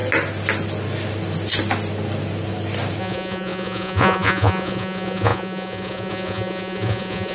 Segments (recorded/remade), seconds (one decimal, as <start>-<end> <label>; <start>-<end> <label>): 0.0-3.0 recorded; 3.0-7.3 remade